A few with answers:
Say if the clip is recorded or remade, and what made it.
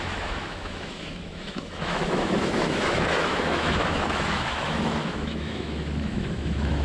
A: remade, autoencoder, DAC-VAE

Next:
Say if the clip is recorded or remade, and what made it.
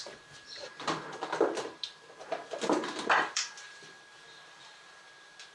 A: remade, vocoder, BigVGAN v2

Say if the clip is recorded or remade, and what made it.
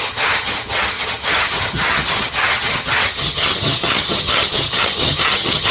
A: remade, vocoder, HiFi-GAN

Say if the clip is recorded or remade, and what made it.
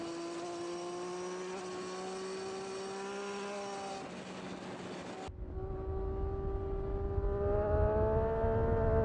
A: recorded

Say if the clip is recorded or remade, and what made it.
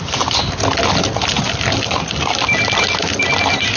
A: recorded